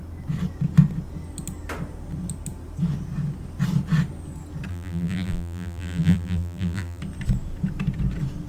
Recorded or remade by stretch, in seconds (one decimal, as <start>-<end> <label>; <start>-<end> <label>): 0.0-4.7 recorded; 4.7-7.0 remade; 7.0-8.5 recorded